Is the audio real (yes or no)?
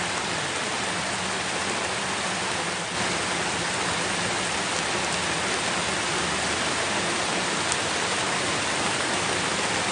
yes